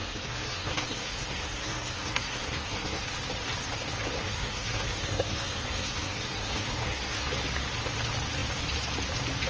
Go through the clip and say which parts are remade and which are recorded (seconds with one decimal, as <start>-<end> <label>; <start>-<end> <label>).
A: 0.0-3.0 remade; 3.0-4.2 recorded; 4.2-7.3 remade; 7.3-9.5 recorded